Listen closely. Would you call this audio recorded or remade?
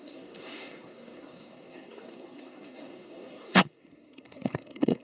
remade